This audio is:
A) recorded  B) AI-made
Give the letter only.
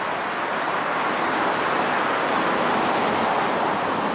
A